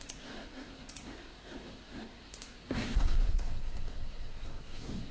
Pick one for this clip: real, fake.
fake